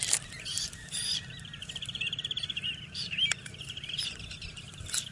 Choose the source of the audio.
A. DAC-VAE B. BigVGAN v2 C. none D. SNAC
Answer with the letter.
B